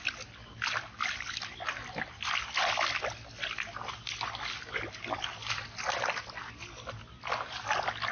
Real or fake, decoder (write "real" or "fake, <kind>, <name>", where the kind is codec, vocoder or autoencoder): real